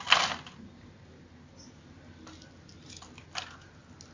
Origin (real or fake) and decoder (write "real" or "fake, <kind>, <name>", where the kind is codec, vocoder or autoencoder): real